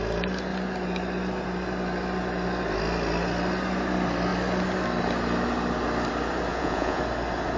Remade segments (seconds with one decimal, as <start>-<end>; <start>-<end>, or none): 6.5-7.0